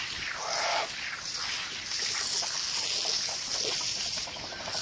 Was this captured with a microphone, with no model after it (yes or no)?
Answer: yes